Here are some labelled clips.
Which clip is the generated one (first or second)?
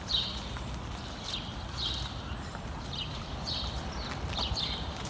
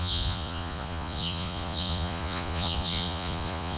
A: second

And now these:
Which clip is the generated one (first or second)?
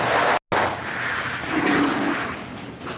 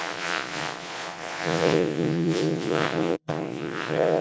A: second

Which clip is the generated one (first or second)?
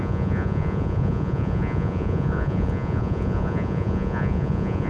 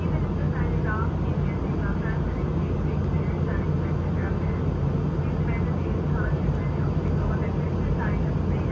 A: first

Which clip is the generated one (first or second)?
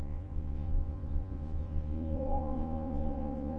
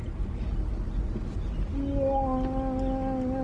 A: first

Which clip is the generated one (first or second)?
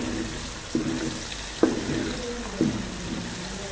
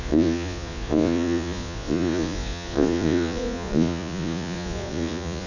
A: second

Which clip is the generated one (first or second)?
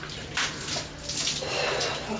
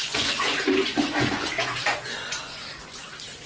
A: second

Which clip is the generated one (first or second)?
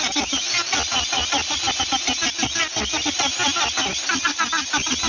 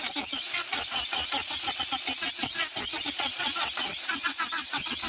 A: second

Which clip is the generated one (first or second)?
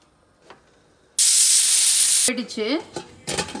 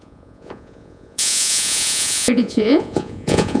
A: second